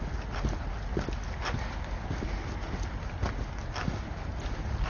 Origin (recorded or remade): recorded